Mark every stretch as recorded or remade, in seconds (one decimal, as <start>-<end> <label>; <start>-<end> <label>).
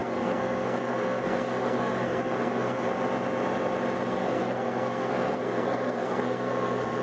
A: 0.0-2.9 remade; 2.9-4.1 recorded; 4.1-7.0 remade